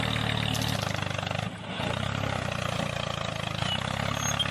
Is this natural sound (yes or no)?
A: yes